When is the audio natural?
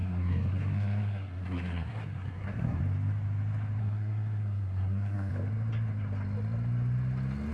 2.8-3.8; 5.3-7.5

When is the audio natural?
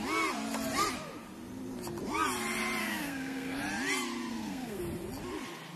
0.0-2.8; 3.6-4.3; 4.8-5.8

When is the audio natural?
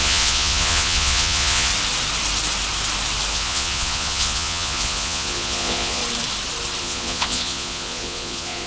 1.7-3.3; 6.0-6.8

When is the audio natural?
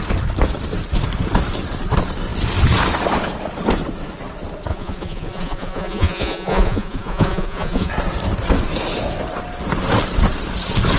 0.0-4.7; 7.9-11.0